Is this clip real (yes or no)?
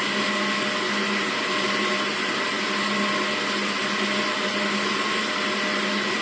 yes